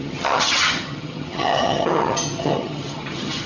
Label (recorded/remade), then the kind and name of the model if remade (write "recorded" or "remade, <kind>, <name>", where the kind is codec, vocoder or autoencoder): remade, vocoder, HiFi-GAN